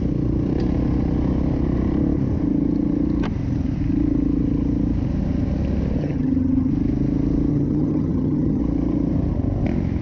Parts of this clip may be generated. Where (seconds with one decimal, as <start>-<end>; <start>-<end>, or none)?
6.0-6.7; 7.5-8.6